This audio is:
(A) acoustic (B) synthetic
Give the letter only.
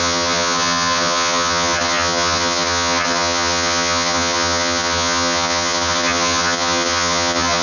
B